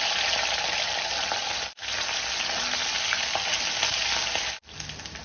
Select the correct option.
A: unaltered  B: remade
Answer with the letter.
A